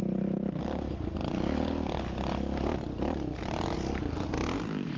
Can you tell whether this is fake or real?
real